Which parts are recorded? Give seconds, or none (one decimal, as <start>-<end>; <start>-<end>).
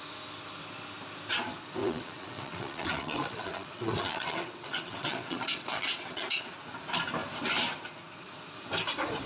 0.0-1.8; 6.5-9.3